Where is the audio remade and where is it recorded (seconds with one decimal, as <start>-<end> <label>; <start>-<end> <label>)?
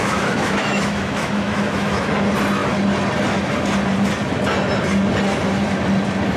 0.0-2.1 remade; 2.1-6.4 recorded